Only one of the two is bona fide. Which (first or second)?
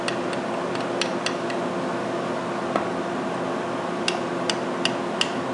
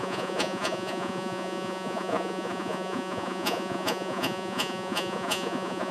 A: first